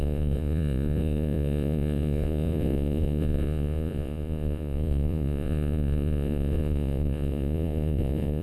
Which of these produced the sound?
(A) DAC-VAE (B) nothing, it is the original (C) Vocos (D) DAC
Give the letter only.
C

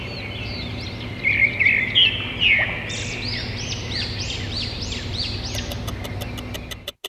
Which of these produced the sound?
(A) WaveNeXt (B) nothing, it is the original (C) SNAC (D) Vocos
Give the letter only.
B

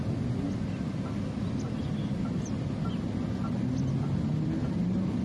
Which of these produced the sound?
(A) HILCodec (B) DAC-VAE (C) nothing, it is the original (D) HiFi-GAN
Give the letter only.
C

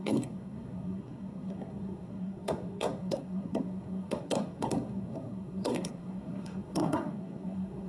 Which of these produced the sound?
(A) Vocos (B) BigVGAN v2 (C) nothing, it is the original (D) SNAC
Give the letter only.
D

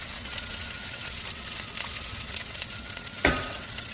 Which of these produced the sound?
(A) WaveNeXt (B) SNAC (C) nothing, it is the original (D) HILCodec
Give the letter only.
A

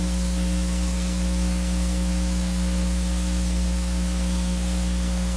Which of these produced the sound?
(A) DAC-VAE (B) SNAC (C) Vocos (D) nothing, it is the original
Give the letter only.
B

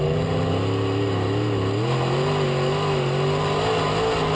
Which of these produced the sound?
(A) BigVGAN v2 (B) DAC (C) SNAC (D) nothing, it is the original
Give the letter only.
D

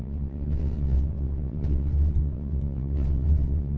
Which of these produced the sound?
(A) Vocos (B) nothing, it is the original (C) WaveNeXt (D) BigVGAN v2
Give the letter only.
C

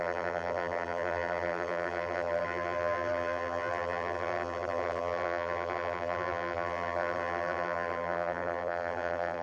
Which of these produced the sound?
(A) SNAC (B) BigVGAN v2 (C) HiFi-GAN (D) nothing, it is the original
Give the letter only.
B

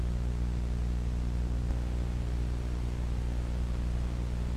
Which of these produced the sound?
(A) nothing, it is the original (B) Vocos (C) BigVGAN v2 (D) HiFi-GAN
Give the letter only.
A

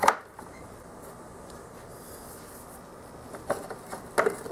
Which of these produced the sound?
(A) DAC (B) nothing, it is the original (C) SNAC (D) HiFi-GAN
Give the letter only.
B